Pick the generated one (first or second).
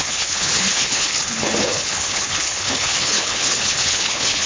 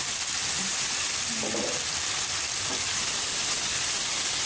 first